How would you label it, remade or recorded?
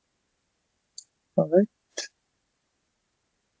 recorded